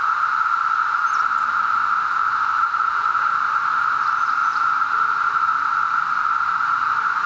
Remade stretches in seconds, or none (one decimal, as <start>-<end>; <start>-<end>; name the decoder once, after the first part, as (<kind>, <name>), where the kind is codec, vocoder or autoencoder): none